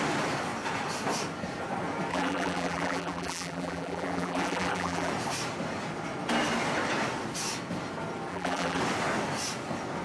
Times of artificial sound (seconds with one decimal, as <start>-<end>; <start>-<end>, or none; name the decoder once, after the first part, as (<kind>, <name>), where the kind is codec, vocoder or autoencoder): 2.1-5.1 (vocoder, BigVGAN v2); 8.3-8.8